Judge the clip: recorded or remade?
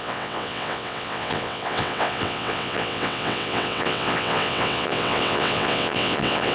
remade